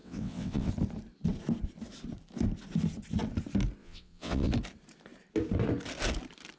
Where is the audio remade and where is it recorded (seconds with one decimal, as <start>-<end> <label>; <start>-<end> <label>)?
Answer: 0.0-0.7 remade; 0.7-3.8 recorded; 3.8-4.5 remade; 4.5-6.6 recorded